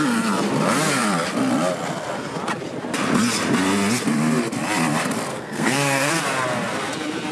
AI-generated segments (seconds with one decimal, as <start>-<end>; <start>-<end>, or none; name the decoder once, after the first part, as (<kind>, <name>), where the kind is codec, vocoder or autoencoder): 5.3-6.1 (codec, SNAC)